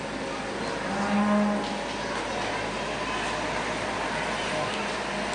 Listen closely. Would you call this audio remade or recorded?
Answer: recorded